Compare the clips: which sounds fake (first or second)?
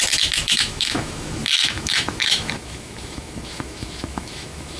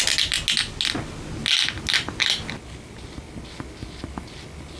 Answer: first